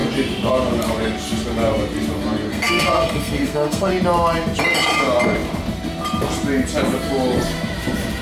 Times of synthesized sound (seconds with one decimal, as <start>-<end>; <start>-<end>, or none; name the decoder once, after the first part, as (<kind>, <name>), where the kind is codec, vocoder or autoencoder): 2.5-3.9 (codec, SNAC)